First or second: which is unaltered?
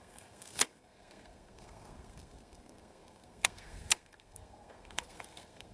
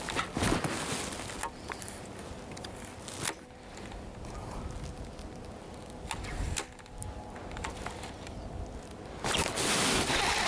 second